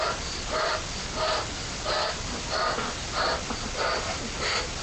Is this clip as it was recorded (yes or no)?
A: yes